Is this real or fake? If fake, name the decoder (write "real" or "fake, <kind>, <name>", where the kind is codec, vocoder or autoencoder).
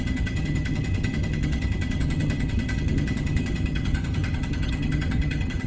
fake, vocoder, HiFi-GAN